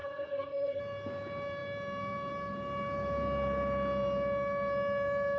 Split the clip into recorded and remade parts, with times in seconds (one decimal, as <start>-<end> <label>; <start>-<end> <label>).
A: 0.0-0.8 remade; 0.8-5.4 recorded